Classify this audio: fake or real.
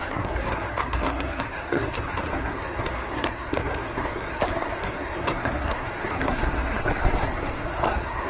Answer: fake